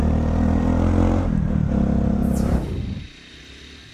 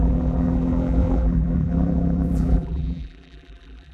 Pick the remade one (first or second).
second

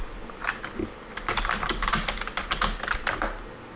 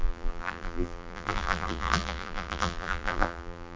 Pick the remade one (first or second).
second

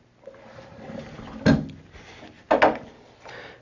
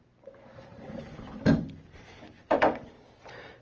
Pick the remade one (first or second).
second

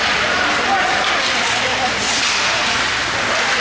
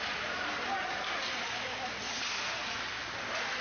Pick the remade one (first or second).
first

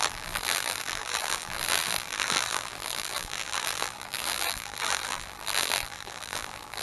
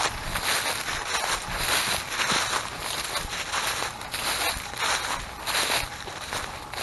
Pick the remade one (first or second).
first